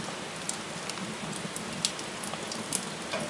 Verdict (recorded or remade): recorded